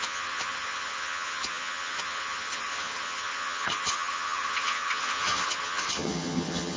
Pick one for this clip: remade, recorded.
remade